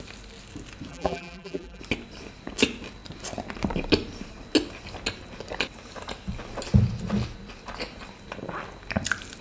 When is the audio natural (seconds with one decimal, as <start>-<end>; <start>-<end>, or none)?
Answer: 0.0-0.9; 1.8-9.4